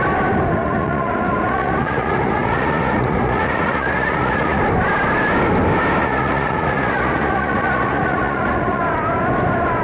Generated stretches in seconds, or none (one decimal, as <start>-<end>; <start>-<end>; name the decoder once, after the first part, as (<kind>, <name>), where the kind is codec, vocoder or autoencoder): 0.6-4.6 (vocoder, Vocos); 6.0-8.8

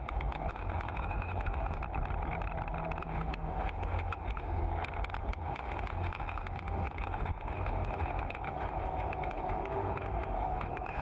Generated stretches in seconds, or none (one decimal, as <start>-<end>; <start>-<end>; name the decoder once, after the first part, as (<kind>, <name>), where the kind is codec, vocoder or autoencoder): 0.0-1.8 (autoencoder, DAC-VAE); 3.0-4.6; 5.2-11.0